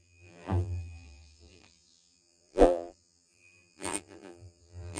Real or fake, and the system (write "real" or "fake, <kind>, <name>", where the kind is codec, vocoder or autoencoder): fake, vocoder, BigVGAN v2